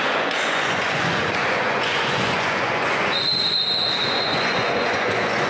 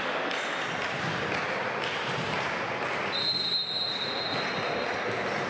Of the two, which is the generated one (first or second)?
first